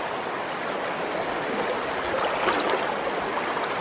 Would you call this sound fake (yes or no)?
no